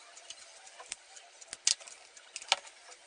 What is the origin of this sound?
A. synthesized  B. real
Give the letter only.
B